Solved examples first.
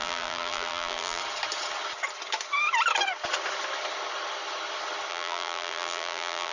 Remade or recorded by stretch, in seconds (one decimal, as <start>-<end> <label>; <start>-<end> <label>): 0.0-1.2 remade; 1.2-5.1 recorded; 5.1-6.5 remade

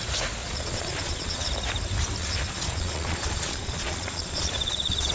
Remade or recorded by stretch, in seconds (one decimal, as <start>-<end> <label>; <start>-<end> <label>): 0.0-0.4 recorded; 0.4-1.5 remade; 1.5-2.2 recorded; 2.2-5.1 remade

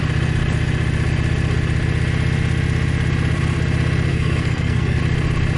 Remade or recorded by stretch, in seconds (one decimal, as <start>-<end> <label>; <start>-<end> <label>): 0.0-4.1 recorded; 4.1-5.0 remade; 5.0-5.6 recorded